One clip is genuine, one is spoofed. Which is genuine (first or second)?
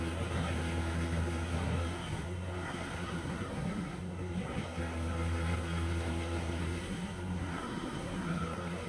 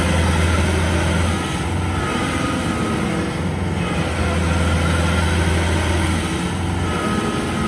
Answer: second